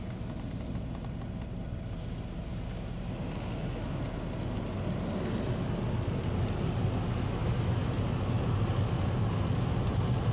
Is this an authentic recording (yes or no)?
yes